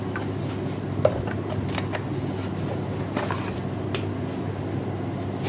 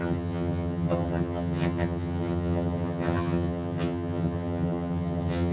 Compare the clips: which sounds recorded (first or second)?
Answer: first